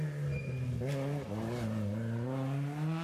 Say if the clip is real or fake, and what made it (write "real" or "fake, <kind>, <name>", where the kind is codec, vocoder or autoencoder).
real